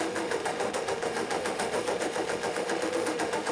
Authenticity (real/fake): fake